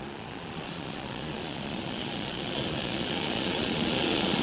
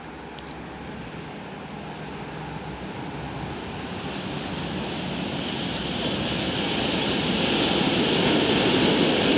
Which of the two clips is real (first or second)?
second